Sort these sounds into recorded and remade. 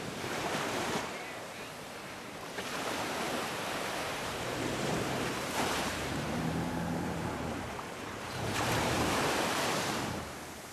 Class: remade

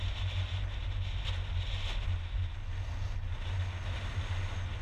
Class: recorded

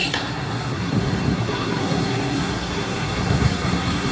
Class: remade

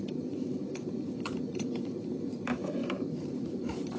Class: remade